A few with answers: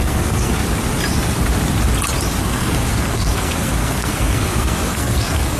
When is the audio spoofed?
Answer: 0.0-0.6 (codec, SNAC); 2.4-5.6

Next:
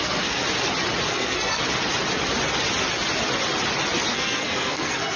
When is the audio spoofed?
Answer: 0.0-0.4 (codec, SNAC); 1.1-1.6; 4.1-5.2

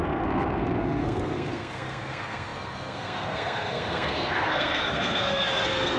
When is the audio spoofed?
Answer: 0.0-6.0 (codec, SNAC)

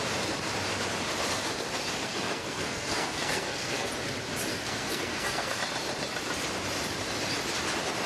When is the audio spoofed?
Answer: 2.0-3.9 (codec, SNAC); 4.5-5.6

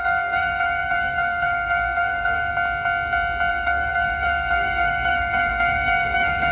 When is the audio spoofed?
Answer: 0.0-2.5 (codec, SNAC); 3.5-6.5

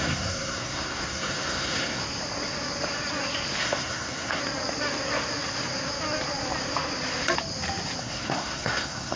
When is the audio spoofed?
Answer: 0.0-2.0 (codec, SNAC); 3.6-4.4; 8.0-9.2

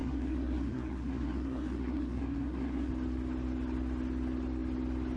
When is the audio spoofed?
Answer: 0.0-2.9 (codec, SNAC)

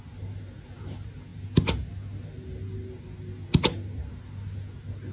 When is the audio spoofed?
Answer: none